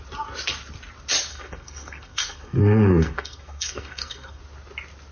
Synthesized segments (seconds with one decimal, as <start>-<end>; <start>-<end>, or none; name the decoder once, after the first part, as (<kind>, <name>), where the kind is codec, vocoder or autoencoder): 1.3-4.4 (codec, SNAC)